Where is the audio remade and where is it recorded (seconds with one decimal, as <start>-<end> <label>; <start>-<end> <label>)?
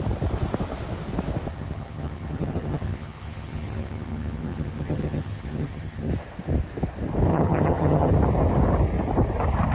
0.0-1.5 recorded; 1.5-6.1 remade; 6.1-7.3 recorded; 7.3-8.1 remade; 8.1-9.7 recorded